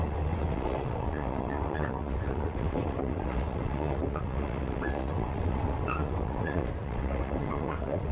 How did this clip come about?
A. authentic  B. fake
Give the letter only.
B